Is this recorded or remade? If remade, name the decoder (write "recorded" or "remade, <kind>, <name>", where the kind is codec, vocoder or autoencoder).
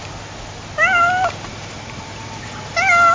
recorded